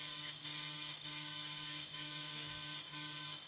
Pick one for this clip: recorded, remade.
remade